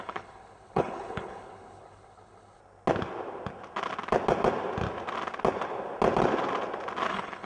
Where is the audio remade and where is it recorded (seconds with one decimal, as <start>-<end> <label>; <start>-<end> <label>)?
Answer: 0.0-2.6 remade; 2.6-7.1 recorded; 7.1-7.5 remade